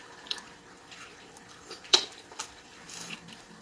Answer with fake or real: fake